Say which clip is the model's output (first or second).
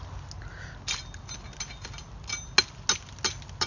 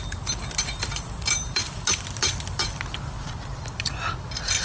second